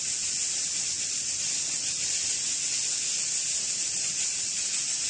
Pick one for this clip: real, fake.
real